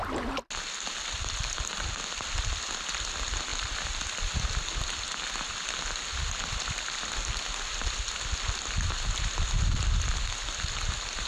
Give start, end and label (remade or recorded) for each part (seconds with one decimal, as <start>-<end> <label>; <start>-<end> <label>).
0.0-11.3 recorded